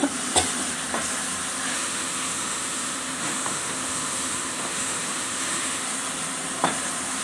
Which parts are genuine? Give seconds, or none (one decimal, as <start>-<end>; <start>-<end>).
0.0-1.7; 5.8-7.2